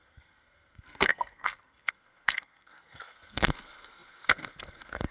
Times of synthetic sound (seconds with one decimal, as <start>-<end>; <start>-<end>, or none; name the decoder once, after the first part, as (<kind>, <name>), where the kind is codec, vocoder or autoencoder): 0.0-5.1 (codec, SNAC)